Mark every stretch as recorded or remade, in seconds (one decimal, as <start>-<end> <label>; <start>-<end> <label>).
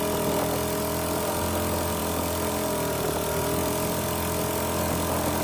0.0-5.4 recorded